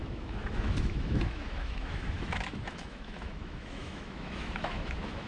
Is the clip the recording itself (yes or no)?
no